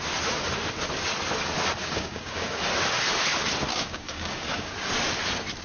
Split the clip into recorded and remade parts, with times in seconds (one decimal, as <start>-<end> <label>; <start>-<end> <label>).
0.0-1.8 recorded; 1.8-2.6 remade; 2.6-3.7 recorded; 3.7-4.7 remade; 4.7-5.6 recorded